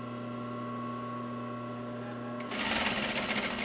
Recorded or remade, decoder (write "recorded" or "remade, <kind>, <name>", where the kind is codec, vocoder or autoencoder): recorded